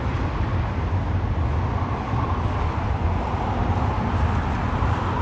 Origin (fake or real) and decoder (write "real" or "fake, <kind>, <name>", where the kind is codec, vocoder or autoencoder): real